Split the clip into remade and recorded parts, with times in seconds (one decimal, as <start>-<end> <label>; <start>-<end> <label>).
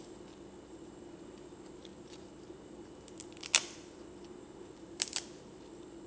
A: 0.0-6.1 recorded